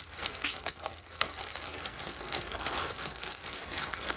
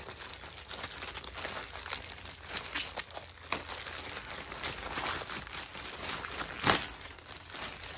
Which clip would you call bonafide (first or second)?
second